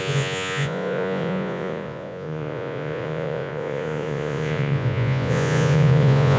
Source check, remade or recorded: remade